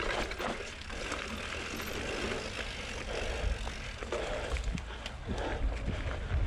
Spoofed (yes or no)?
no